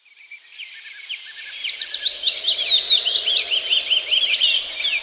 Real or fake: real